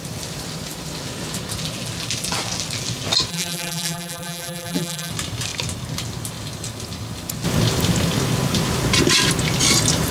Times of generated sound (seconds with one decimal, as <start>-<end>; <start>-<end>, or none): 3.3-5.1